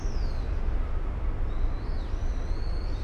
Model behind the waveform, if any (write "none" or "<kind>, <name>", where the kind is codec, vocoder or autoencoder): none